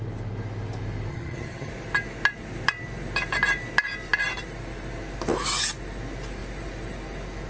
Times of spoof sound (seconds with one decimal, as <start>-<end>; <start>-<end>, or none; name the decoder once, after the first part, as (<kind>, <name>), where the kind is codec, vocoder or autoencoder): 1.1-1.7 (vocoder, HiFi-GAN)